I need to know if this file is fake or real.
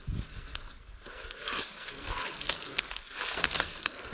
fake